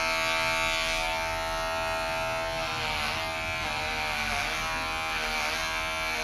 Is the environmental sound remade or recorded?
recorded